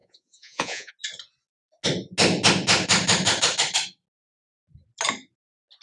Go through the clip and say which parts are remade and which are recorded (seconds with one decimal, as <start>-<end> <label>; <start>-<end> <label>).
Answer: 0.0-0.9 remade; 0.9-5.8 recorded